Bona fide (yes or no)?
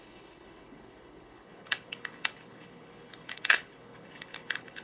no